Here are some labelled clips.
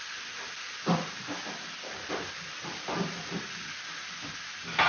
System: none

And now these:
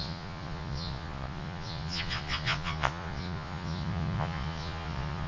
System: vocoder, Vocos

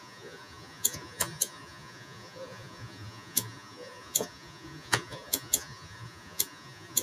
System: vocoder, Vocos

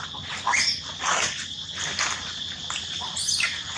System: none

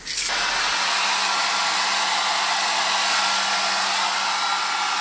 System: none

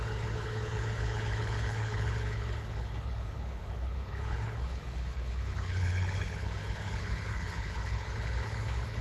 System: codec, HILCodec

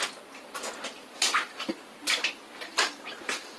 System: none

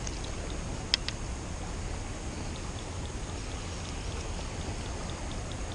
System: none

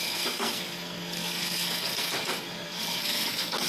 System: codec, SNAC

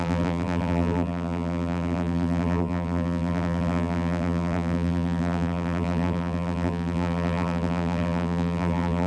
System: vocoder, BigVGAN v2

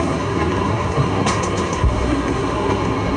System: codec, SNAC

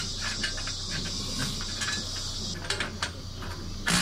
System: none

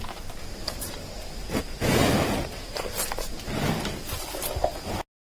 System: none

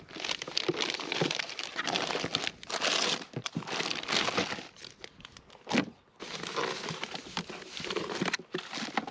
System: none